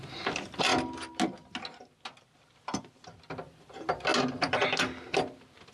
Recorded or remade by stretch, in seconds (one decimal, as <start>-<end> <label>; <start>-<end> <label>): 0.0-5.7 recorded